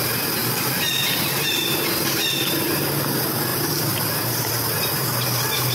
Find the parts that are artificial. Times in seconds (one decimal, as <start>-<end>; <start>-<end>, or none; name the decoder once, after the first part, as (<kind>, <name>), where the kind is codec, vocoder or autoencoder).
none